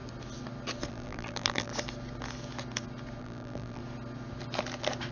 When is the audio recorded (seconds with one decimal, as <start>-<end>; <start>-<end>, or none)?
0.0-0.9; 1.7-3.2; 3.8-5.1